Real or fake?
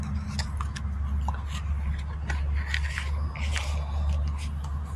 real